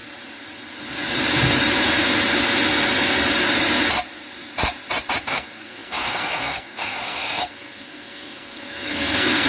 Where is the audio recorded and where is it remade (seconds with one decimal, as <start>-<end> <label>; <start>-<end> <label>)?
0.0-5.2 recorded; 5.2-9.5 remade